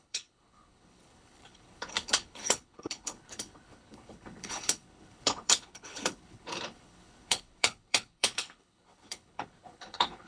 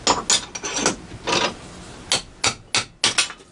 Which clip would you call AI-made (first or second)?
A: first